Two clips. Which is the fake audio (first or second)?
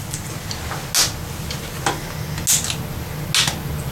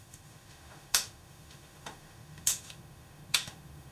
second